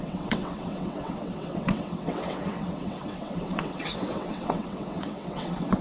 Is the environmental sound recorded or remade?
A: remade